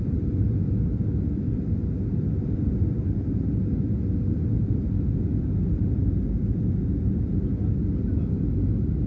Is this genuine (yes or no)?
yes